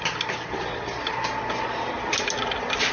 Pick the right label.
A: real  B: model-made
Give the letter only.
A